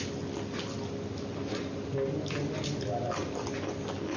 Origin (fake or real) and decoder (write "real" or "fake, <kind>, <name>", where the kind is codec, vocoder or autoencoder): real